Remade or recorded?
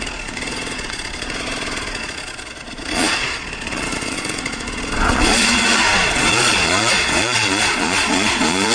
remade